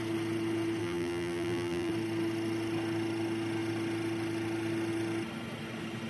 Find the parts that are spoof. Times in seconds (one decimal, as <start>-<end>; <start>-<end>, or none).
0.8-1.9